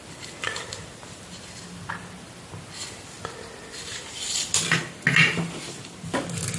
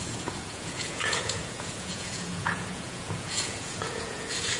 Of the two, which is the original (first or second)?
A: first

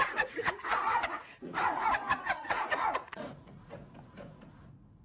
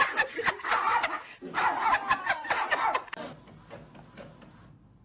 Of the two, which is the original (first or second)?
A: second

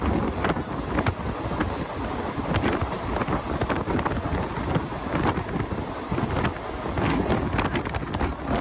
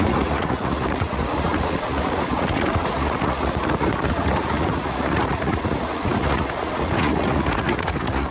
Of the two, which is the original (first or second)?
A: first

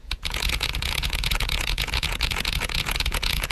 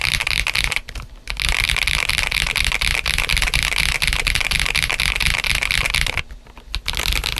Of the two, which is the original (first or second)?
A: second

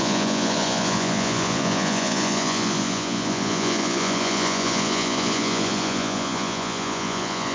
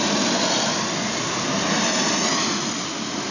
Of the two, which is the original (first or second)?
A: second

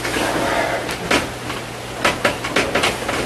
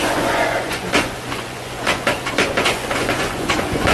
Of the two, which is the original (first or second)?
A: first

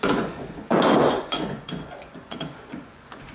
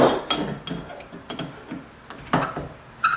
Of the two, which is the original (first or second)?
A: second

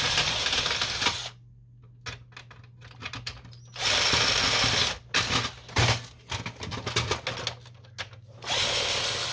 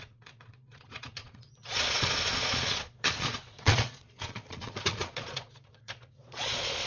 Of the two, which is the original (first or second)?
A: first